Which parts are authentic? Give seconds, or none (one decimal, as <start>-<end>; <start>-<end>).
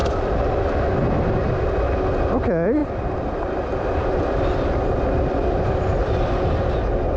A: 0.6-2.8; 6.1-7.2